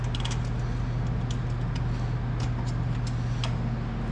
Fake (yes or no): no